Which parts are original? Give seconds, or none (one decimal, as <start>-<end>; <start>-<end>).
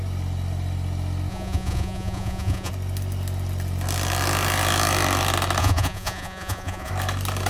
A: 0.0-1.3; 2.7-5.6; 6.9-7.5